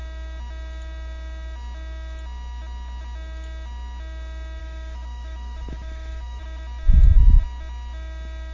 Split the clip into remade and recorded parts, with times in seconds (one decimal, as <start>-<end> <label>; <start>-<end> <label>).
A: 0.0-4.6 recorded; 4.6-6.4 remade; 6.4-8.5 recorded